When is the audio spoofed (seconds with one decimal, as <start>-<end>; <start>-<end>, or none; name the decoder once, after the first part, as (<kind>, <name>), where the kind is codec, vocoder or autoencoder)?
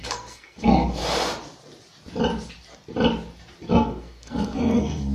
0.0-1.0 (codec, SNAC); 3.7-5.1